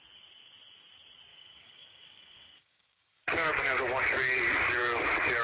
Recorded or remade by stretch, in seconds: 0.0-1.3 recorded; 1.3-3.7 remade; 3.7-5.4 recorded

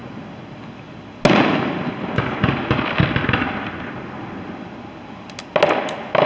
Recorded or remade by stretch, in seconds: 0.0-6.3 recorded

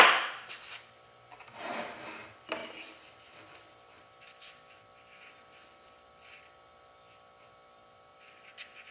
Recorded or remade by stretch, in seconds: 0.0-8.1 recorded; 8.1-8.9 remade

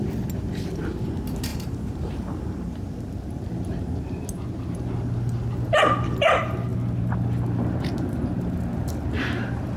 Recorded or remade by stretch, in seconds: 0.0-1.5 recorded; 1.5-2.8 remade; 2.8-9.8 recorded